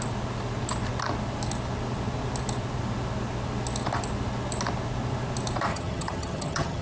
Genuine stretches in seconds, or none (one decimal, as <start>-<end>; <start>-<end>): 0.0-5.7